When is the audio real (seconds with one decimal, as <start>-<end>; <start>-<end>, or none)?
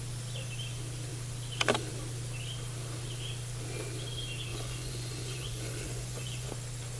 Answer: 0.0-4.5; 6.5-7.0